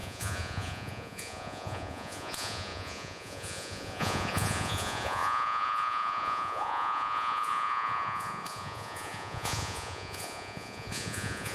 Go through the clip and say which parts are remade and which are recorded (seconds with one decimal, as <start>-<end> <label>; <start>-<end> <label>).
0.0-11.5 remade